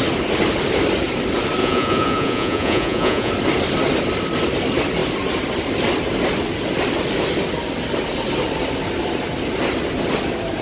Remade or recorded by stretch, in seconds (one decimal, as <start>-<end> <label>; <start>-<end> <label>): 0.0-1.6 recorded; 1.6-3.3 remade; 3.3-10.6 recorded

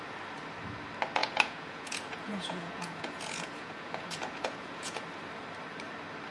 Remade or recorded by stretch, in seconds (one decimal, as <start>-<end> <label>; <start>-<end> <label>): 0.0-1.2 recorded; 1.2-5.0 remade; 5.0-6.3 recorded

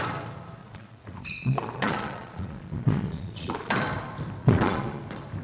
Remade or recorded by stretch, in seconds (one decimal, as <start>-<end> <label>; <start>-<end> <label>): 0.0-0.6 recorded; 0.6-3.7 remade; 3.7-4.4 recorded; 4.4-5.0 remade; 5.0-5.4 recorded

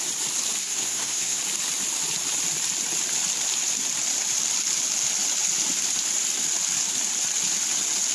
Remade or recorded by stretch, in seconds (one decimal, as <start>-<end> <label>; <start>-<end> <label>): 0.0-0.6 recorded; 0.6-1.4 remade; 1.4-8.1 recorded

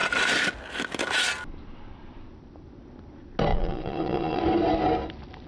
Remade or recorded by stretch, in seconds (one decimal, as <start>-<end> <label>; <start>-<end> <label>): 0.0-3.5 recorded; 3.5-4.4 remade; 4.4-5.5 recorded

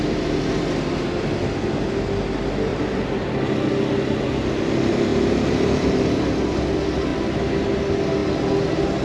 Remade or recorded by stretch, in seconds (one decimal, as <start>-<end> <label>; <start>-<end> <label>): 0.0-2.7 recorded; 2.7-3.3 remade; 3.3-5.1 recorded; 5.1-6.2 remade; 6.2-9.0 recorded

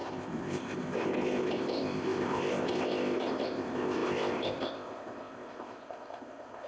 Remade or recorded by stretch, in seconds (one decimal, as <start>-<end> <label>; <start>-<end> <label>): 0.0-6.7 remade

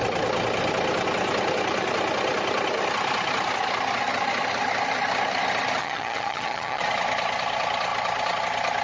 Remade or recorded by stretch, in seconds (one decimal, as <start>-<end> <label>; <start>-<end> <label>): 0.0-5.8 recorded; 5.8-6.8 remade; 6.8-8.8 recorded